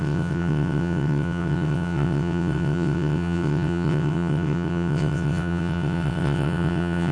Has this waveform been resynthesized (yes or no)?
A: yes